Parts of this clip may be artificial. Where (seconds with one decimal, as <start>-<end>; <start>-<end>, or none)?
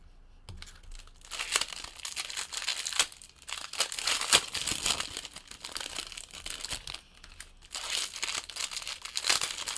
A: none